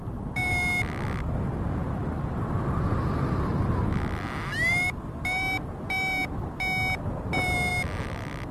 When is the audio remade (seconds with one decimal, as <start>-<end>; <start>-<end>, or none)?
none

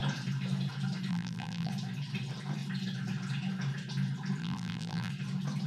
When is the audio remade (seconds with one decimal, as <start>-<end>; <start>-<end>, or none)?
1.1-1.7; 4.4-5.1

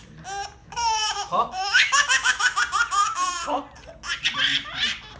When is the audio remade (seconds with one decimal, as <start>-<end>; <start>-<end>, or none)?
0.6-2.6; 3.0-3.6